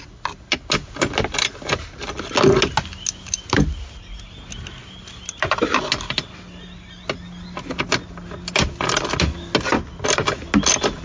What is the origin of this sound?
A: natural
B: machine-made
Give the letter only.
A